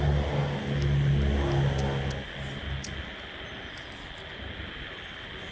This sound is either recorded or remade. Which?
recorded